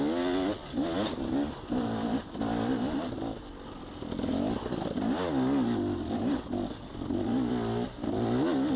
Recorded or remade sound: recorded